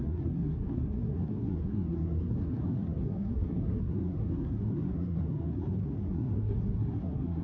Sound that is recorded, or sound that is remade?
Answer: remade